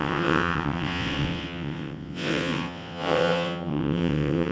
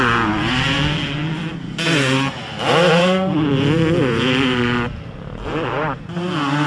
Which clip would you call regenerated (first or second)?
first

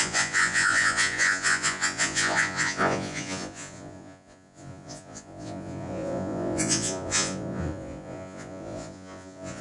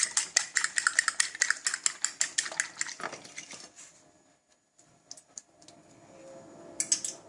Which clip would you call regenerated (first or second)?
first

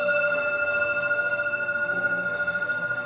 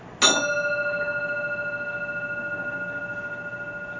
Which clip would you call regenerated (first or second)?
first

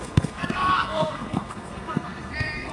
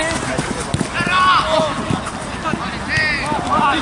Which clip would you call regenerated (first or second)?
first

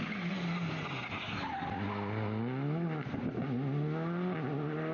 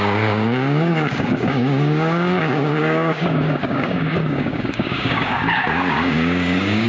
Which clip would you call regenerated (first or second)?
second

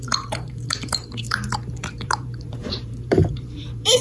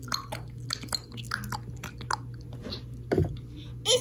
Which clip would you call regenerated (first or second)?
first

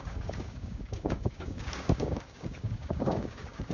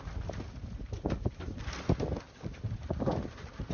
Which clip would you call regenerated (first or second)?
first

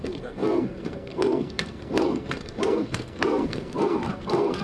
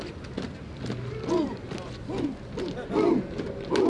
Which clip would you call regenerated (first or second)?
first